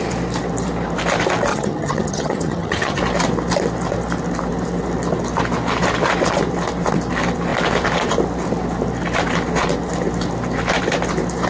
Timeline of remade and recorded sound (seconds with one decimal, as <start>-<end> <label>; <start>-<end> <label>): 0.0-1.5 recorded; 1.5-3.0 remade; 3.0-11.5 recorded